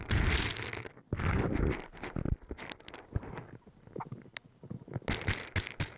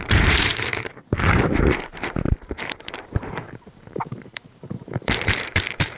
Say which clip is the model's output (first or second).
second